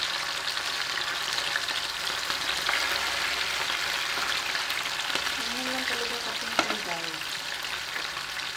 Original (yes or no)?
yes